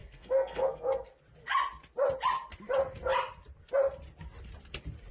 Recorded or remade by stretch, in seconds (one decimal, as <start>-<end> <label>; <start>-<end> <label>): 0.0-1.1 remade; 1.1-5.1 recorded